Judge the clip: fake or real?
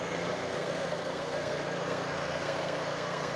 fake